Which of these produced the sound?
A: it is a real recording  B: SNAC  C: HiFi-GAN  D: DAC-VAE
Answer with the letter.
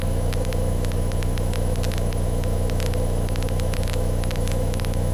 D